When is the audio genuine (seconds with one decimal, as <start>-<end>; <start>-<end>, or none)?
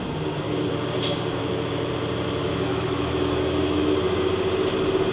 0.0-1.4; 1.9-2.4; 3.9-5.1